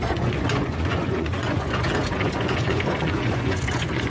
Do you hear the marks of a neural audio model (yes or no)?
yes